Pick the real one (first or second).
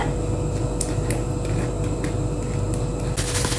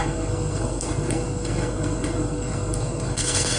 first